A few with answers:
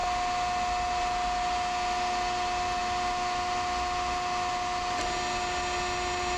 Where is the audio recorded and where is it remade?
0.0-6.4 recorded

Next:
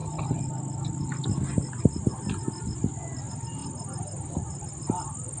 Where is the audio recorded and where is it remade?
0.0-5.4 recorded

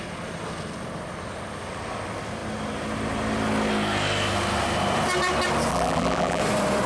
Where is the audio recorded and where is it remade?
0.0-5.7 recorded; 5.7-6.4 remade; 6.4-6.9 recorded

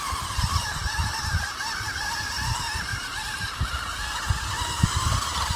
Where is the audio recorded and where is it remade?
0.0-2.9 recorded; 2.9-3.5 remade; 3.5-5.6 recorded

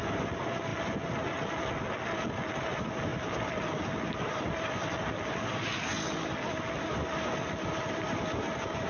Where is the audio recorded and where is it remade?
0.0-8.9 recorded

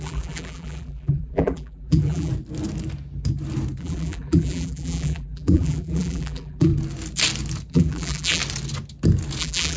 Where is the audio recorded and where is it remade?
0.0-2.3 remade; 2.3-3.8 recorded; 3.8-6.7 remade; 6.7-7.7 recorded; 7.7-8.4 remade; 8.4-9.4 recorded; 9.4-9.8 remade

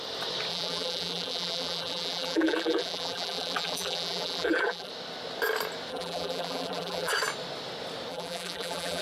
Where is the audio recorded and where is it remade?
0.0-0.5 recorded; 0.5-4.9 remade; 4.9-5.9 recorded; 5.9-7.1 remade; 7.1-8.1 recorded; 8.1-9.0 remade

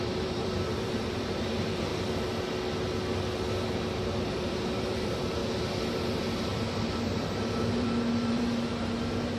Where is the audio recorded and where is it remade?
0.0-1.9 remade; 1.9-4.3 recorded; 4.3-5.4 remade; 5.4-5.9 recorded; 5.9-6.5 remade; 6.5-7.0 recorded; 7.0-9.4 remade